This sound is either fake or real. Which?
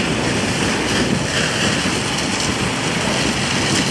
real